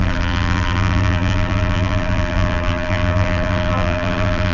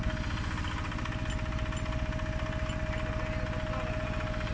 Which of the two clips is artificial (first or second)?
first